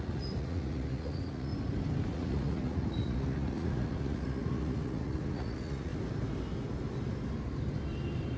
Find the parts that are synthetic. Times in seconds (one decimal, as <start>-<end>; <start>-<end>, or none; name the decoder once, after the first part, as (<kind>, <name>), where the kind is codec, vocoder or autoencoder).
0.0-1.5 (vocoder, Vocos); 2.1-5.9